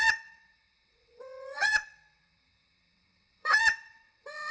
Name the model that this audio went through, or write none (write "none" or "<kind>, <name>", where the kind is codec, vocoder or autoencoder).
vocoder, WaveNeXt